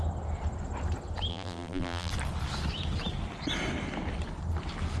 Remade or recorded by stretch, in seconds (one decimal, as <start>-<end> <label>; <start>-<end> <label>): 0.0-1.3 recorded; 1.3-2.1 remade; 2.1-5.0 recorded